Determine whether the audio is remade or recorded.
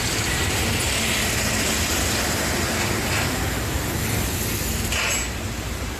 recorded